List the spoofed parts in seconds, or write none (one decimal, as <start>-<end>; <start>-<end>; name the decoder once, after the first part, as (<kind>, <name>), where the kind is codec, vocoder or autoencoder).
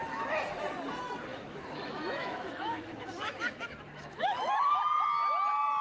1.3-4.8 (autoencoder, DAC-VAE)